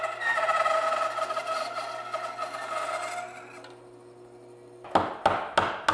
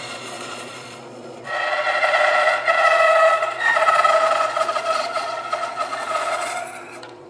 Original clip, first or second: first